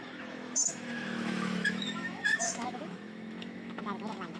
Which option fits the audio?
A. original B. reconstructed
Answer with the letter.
B